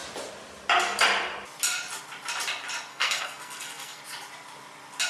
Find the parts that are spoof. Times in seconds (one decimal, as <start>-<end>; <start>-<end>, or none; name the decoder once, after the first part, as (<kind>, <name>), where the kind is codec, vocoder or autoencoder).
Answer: 2.9-4.0 (codec, SNAC)